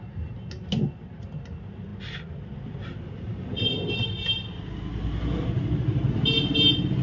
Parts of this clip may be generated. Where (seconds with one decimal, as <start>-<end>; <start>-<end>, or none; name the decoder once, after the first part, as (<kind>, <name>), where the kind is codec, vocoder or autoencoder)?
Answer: none